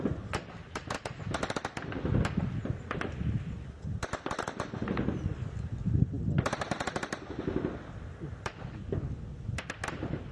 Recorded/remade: recorded